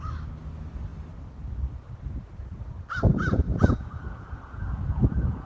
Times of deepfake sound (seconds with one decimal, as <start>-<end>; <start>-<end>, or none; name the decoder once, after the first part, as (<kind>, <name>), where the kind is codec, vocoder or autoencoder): 3.5-5.5 (vocoder, Vocos)